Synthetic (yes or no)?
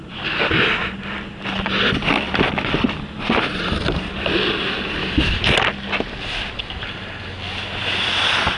no